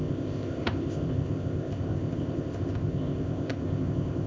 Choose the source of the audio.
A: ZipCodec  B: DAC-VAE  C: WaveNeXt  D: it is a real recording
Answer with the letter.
A